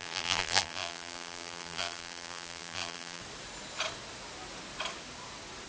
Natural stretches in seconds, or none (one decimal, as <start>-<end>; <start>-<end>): 3.2-5.7